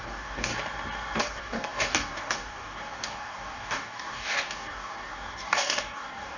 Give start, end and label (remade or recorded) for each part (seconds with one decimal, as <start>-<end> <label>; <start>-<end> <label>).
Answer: 0.0-0.5 remade; 0.5-1.2 recorded; 1.2-6.4 remade